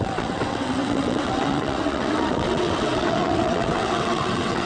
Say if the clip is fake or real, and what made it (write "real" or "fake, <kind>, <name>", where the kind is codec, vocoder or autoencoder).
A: fake, vocoder, WaveNeXt